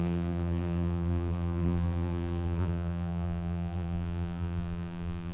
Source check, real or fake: fake